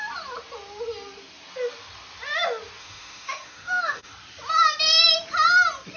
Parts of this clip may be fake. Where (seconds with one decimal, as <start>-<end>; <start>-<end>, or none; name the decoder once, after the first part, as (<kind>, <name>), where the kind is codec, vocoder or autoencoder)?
2.8-4.1 (autoencoder, DAC-VAE)